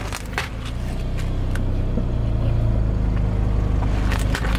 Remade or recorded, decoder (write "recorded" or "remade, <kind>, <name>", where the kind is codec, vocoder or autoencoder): recorded